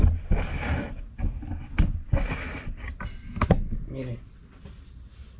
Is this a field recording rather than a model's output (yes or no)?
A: yes